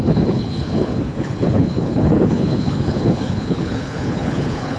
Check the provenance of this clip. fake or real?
fake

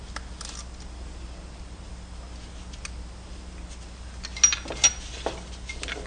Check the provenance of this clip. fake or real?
real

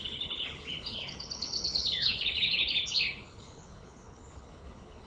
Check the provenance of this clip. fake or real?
fake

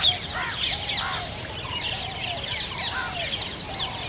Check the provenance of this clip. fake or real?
real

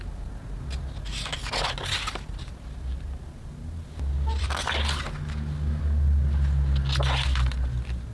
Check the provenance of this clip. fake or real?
real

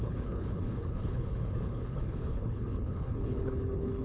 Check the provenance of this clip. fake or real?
fake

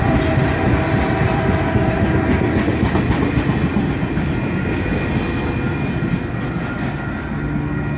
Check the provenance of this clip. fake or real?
real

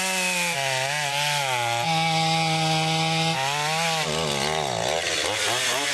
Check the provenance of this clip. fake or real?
real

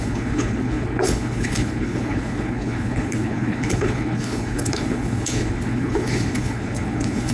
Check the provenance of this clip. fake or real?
fake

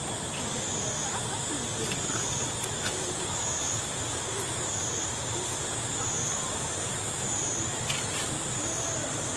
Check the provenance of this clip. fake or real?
real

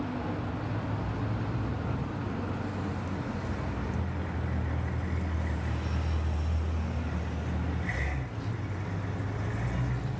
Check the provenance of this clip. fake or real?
real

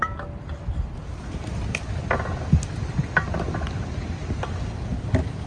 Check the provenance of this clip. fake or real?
real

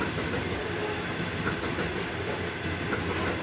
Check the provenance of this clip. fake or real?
real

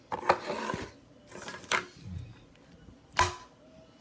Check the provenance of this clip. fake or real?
real